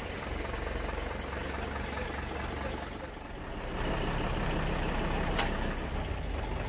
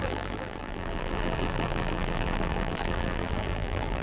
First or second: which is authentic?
first